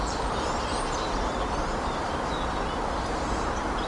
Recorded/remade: recorded